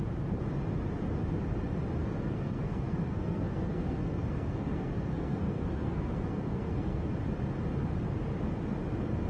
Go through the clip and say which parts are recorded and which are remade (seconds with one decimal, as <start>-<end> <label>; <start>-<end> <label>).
0.0-2.0 recorded; 2.0-7.1 remade; 7.1-9.3 recorded